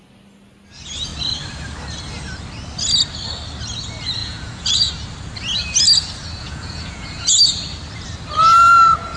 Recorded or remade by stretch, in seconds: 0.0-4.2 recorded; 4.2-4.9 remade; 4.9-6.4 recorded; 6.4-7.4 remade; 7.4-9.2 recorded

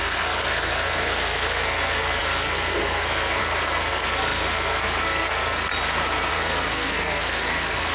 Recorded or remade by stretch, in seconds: 0.0-5.7 remade; 5.7-6.3 recorded; 6.3-7.9 remade

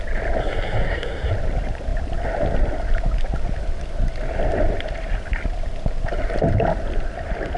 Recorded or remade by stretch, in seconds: 0.0-0.4 recorded; 0.4-1.3 remade; 1.3-7.6 recorded